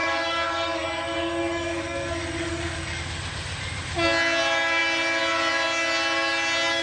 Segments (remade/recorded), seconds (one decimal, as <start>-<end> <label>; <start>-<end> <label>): 0.0-3.0 remade; 3.0-6.8 recorded